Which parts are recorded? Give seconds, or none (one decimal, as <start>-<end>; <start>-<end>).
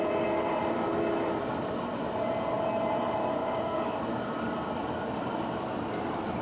0.0-3.4; 4.0-6.4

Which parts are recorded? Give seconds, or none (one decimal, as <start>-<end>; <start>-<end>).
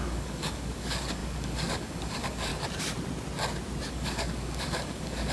2.5-3.9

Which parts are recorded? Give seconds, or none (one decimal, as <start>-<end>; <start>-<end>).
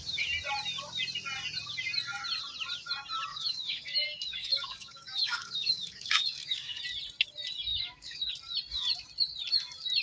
0.0-3.3; 6.8-7.7; 8.3-10.0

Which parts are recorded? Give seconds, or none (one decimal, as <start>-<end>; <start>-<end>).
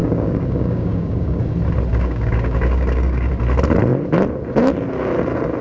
1.4-1.9; 3.3-5.6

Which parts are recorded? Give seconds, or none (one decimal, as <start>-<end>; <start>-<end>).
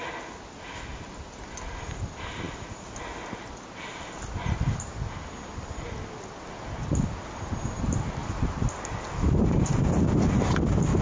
0.0-11.0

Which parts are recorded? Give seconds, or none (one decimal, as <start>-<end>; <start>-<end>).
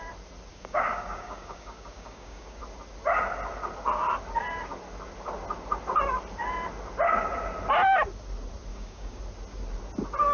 0.0-0.5; 2.6-8.7; 9.2-10.3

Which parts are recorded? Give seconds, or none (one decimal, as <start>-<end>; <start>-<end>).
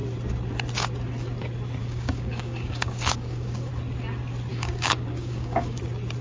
0.0-1.8; 3.7-4.5; 5.8-6.2